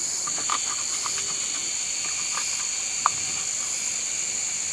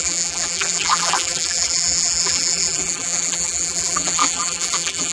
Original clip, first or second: first